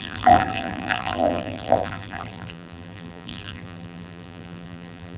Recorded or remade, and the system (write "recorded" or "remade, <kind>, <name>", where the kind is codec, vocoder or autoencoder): remade, vocoder, BigVGAN v2